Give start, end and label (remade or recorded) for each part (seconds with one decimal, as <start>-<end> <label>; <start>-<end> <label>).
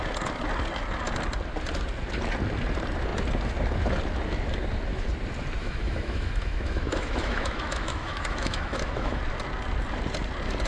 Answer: 0.0-5.6 recorded; 5.6-9.2 remade; 9.2-10.7 recorded